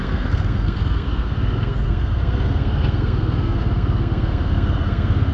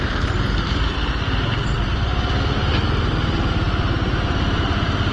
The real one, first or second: second